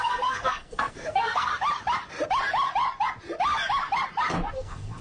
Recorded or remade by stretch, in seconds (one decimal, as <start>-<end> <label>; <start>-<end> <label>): 0.0-1.5 remade; 1.5-4.5 recorded; 4.5-5.0 remade